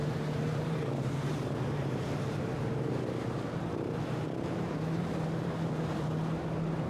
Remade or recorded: remade